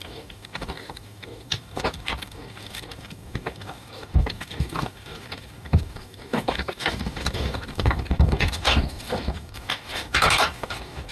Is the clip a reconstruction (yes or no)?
yes